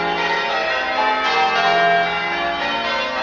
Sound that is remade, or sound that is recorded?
recorded